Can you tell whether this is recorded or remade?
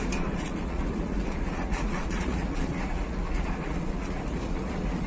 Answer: remade